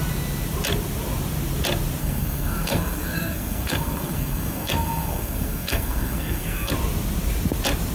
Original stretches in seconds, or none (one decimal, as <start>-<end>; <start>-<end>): 0.0-2.0; 6.7-7.9